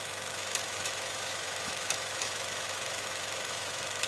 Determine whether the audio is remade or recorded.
remade